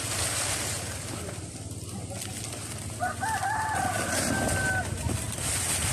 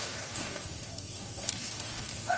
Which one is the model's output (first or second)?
second